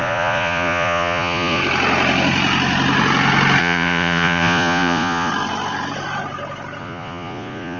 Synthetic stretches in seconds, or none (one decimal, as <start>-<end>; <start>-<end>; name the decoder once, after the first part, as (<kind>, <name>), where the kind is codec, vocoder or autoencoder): 0.0-1.6 (vocoder, Vocos); 3.6-5.3; 6.8-7.8